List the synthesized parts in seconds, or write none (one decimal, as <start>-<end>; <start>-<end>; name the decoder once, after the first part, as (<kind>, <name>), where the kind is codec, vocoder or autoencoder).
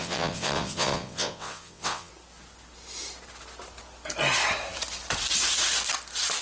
0.0-2.1 (vocoder, WaveNeXt)